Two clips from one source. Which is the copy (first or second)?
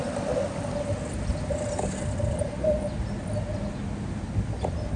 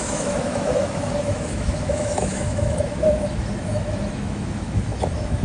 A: second